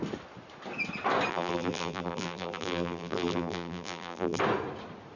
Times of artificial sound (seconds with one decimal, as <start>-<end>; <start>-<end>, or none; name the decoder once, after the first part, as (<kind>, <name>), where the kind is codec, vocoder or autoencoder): 1.3-4.4 (vocoder, BigVGAN v2)